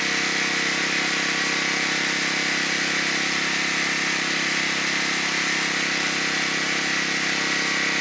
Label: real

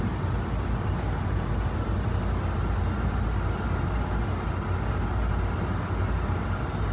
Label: real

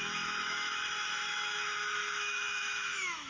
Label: fake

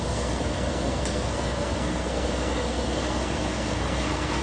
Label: fake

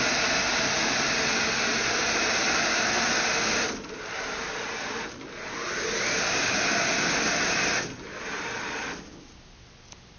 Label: real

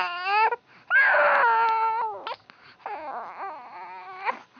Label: real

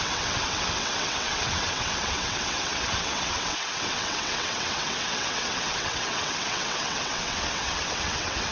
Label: fake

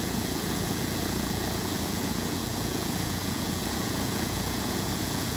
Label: fake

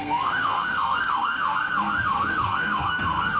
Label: fake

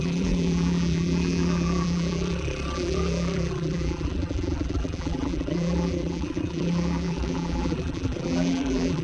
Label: fake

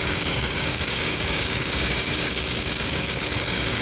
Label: fake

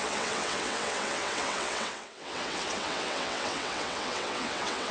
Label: fake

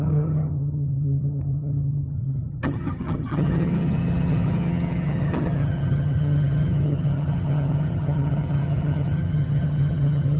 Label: fake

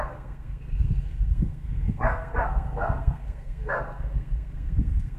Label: fake